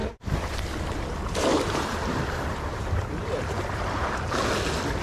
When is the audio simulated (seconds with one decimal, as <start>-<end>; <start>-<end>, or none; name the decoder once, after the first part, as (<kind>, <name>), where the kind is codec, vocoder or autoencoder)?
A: 1.5-4.5 (vocoder, BigVGAN v2)